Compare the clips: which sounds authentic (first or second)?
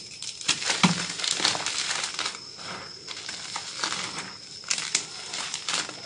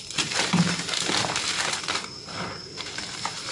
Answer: first